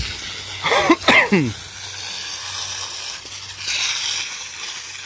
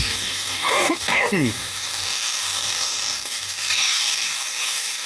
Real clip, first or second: first